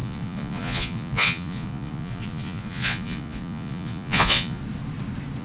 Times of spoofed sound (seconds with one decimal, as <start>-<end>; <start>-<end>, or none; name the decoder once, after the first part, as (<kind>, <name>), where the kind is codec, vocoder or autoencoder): 0.0-4.6 (vocoder, Vocos)